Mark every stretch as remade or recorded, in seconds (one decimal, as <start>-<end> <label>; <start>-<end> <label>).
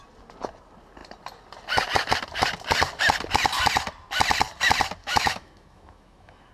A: 0.0-5.0 recorded; 5.0-6.5 remade